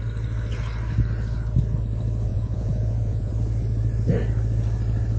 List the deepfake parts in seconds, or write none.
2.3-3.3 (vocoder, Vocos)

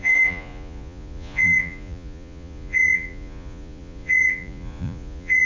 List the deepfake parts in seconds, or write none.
0.0-5.5 (vocoder, Vocos)

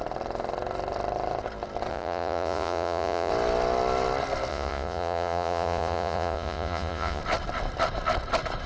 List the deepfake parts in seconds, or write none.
1.9-3.3 (vocoder, Vocos); 4.5-7.2

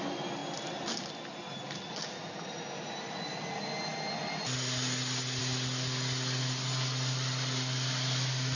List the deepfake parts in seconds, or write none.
none

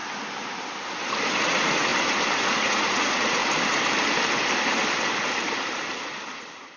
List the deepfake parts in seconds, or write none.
1.4-1.9 (vocoder, Vocos); 2.4-3.4